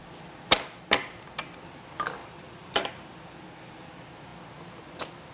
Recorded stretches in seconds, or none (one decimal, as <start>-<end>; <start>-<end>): 0.0-2.2; 3.9-5.3